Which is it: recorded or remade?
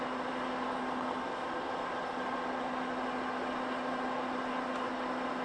recorded